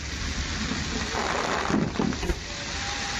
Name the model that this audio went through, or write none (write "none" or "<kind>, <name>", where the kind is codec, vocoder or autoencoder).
none